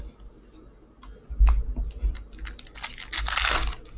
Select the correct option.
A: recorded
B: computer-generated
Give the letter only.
A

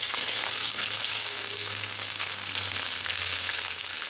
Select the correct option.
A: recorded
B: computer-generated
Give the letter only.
B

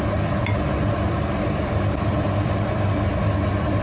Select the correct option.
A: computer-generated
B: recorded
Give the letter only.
A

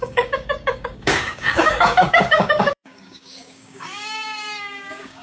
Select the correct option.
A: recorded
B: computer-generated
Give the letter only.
B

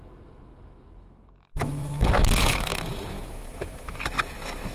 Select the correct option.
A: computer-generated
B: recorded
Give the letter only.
A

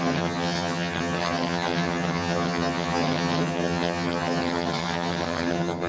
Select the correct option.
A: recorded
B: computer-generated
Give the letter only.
B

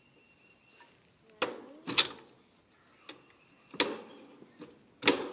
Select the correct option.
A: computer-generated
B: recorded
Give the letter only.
B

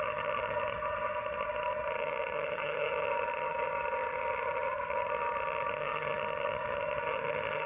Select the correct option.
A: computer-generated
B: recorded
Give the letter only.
A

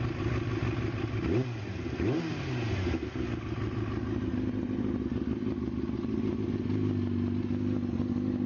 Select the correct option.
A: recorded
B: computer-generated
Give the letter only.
A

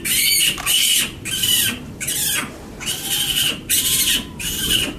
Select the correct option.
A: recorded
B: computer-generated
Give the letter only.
A